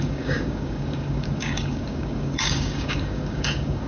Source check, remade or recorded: remade